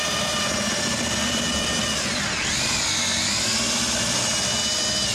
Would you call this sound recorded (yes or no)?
yes